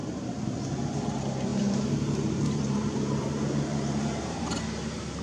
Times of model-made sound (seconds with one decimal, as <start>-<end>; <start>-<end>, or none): 0.0-0.6; 1.5-4.6